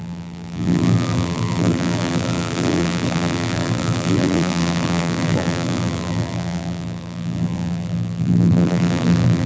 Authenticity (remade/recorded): remade